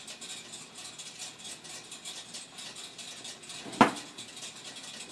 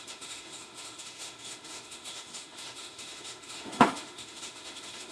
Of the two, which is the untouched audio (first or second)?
first